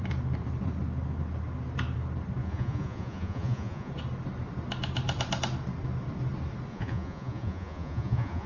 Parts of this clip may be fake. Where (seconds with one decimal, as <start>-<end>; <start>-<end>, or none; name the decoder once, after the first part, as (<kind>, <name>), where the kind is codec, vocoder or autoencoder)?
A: 2.4-3.9 (vocoder, Vocos); 6.7-8.5